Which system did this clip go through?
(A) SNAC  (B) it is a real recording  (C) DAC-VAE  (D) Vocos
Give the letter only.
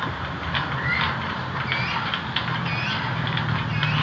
B